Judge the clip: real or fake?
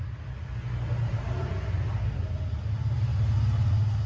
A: real